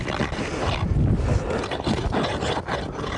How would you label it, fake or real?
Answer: real